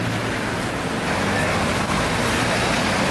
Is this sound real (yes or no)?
yes